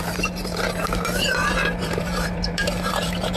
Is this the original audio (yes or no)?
no